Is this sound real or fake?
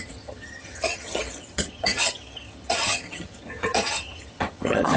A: fake